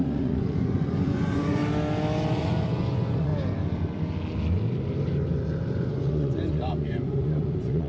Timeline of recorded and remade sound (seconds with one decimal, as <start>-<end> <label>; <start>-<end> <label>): 0.0-1.6 remade; 1.6-2.3 recorded; 2.3-3.3 remade; 3.3-5.9 recorded; 5.9-7.9 remade